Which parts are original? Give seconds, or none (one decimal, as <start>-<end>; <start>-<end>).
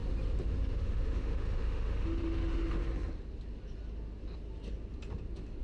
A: 0.0-0.7; 2.8-5.6